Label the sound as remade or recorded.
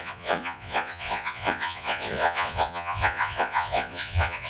remade